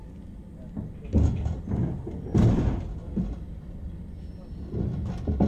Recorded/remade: recorded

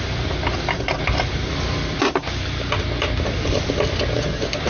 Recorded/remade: recorded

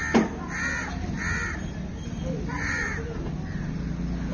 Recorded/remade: recorded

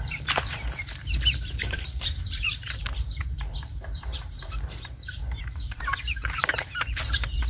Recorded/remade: remade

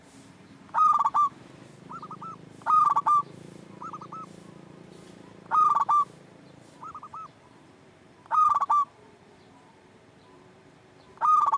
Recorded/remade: remade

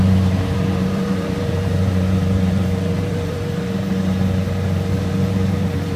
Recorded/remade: remade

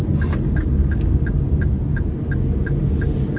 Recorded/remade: recorded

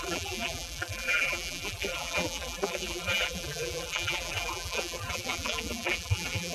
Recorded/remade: remade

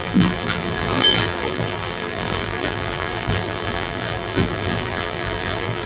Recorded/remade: remade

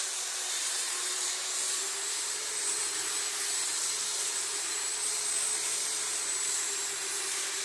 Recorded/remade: remade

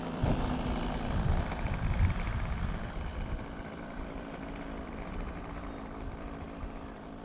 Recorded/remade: remade